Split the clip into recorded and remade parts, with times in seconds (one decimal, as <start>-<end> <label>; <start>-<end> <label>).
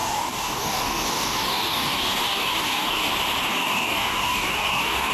0.0-3.1 remade; 3.1-3.5 recorded; 3.5-5.1 remade